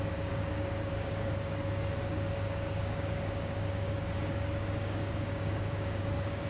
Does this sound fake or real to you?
fake